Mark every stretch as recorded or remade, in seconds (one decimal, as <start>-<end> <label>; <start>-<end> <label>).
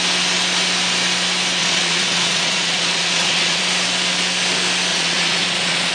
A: 0.0-1.6 recorded; 1.6-3.6 remade; 3.6-4.9 recorded; 4.9-5.9 remade